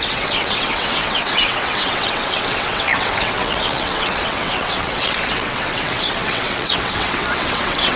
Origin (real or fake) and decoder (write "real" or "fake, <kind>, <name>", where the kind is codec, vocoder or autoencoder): fake, vocoder, WaveNeXt